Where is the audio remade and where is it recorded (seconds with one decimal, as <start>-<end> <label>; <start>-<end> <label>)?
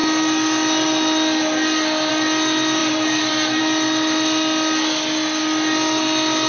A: 0.0-2.8 recorded; 2.8-3.6 remade; 3.6-6.5 recorded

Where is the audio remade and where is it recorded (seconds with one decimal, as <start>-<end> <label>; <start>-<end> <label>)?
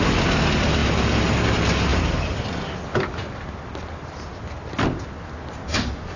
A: 0.0-6.2 recorded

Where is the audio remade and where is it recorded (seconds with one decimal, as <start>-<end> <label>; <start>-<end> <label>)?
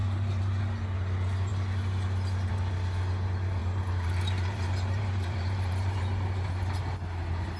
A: 0.0-0.6 remade; 0.6-3.6 recorded; 3.6-6.0 remade; 6.0-7.6 recorded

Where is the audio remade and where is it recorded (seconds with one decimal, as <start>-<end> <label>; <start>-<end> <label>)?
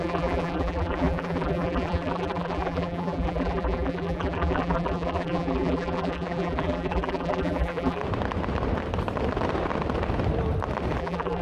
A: 0.0-8.0 remade; 8.0-11.0 recorded; 11.0-11.4 remade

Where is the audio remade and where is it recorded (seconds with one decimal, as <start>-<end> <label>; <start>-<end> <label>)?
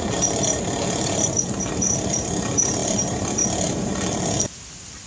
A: 0.0-5.1 remade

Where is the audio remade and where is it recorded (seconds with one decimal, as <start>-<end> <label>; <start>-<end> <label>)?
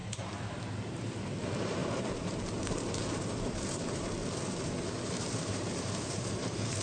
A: 0.0-4.2 remade; 4.2-4.9 recorded; 4.9-6.8 remade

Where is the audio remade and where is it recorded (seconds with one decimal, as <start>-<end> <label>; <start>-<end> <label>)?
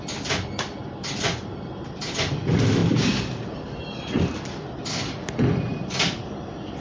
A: 0.0-0.8 recorded; 0.8-2.0 remade; 2.0-6.8 recorded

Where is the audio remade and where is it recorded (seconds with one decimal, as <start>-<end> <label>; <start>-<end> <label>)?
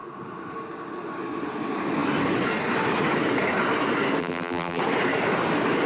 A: 0.0-4.2 recorded; 4.2-4.8 remade; 4.8-5.9 recorded